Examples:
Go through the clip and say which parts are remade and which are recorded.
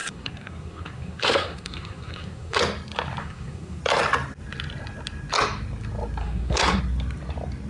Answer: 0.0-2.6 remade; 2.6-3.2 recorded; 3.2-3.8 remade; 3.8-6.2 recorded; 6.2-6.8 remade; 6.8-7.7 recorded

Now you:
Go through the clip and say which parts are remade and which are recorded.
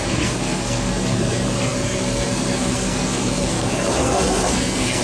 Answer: 0.0-5.0 remade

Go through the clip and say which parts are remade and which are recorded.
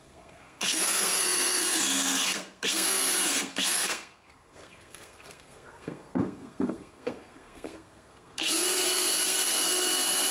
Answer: 0.0-10.3 remade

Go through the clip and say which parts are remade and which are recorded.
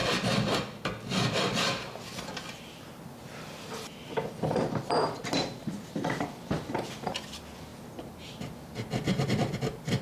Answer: 0.0-10.0 recorded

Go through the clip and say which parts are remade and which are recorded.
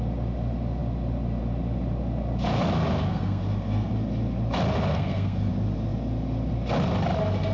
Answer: 0.0-3.1 recorded; 3.1-3.9 remade; 3.9-4.9 recorded; 4.9-5.5 remade; 5.5-7.5 recorded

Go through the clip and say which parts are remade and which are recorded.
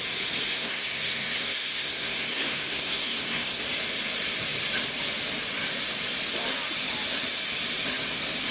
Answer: 0.0-0.5 recorded; 0.5-3.6 remade; 3.6-8.5 recorded